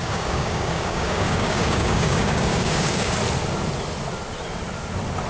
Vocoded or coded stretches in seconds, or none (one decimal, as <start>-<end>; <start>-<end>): 0.0-3.2